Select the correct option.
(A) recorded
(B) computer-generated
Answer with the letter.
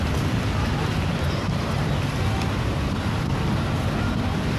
A